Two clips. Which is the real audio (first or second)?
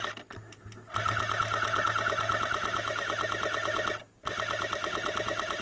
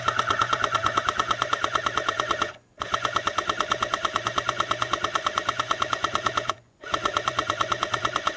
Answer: first